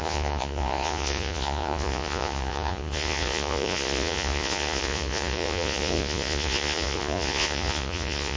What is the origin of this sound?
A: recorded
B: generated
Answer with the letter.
B